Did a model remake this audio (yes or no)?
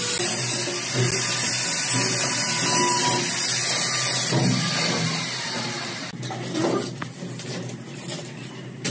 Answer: no